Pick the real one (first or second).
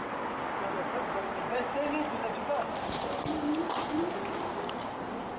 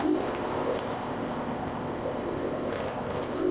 first